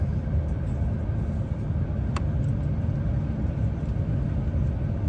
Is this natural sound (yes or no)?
yes